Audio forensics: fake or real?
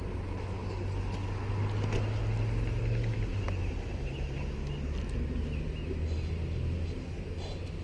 real